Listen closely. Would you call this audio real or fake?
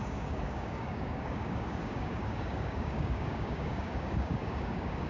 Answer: fake